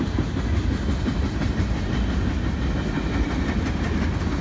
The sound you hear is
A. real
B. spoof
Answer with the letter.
A